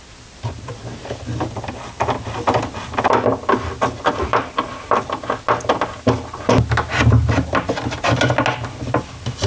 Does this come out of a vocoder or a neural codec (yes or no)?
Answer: no